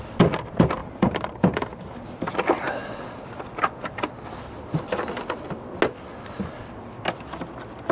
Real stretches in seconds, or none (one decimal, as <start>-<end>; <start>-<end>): 0.0-0.8; 2.2-7.9